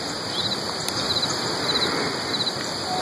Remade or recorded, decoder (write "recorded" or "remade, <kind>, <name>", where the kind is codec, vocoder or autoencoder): recorded